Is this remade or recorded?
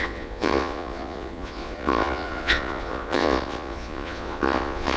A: remade